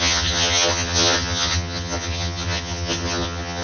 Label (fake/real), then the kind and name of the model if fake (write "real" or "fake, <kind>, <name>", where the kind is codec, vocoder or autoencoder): fake, vocoder, HiFi-GAN